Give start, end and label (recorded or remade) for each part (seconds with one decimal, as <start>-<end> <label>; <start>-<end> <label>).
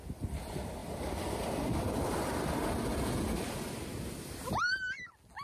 0.0-5.4 recorded